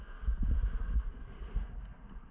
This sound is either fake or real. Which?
real